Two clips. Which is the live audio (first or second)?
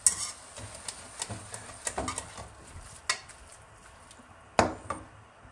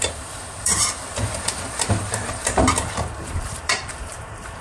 first